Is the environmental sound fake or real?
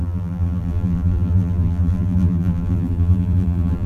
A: fake